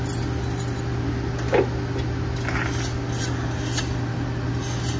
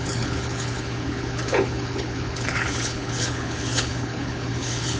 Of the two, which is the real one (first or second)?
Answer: first